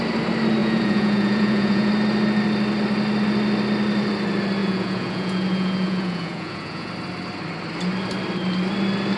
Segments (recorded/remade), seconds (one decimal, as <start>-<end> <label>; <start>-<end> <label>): 0.0-0.6 recorded; 0.6-1.9 remade; 1.9-4.6 recorded; 4.6-6.9 remade; 6.9-9.2 recorded